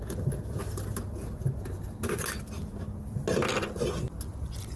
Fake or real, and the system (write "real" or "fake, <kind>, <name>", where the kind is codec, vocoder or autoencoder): real